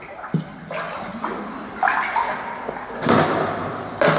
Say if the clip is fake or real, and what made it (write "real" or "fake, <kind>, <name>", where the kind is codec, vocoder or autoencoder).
real